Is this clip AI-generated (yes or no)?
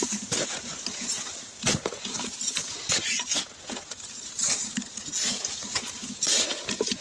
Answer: yes